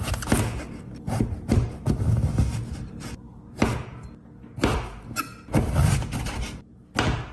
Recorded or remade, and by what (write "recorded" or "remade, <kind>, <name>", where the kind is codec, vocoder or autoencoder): recorded